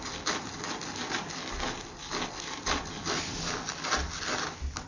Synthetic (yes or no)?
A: no